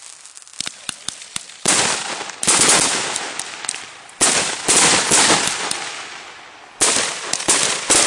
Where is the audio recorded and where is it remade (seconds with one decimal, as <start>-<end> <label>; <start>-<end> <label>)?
0.0-8.1 recorded